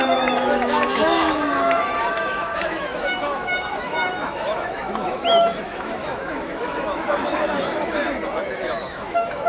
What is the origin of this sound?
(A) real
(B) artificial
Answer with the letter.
B